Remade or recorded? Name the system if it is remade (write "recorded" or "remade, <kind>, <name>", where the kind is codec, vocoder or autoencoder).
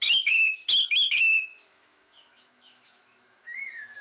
remade, autoencoder, DAC-VAE